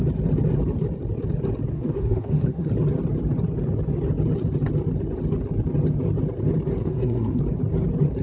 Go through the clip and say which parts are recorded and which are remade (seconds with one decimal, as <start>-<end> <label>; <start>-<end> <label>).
0.0-1.7 recorded; 1.7-2.7 remade; 2.7-6.8 recorded; 6.8-7.4 remade; 7.4-8.2 recorded